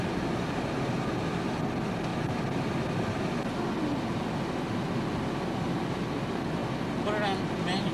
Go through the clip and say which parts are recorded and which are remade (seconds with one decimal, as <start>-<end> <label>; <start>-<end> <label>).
0.0-7.9 recorded